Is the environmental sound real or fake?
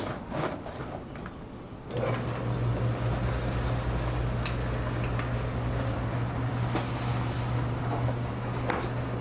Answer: real